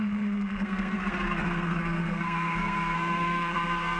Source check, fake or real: fake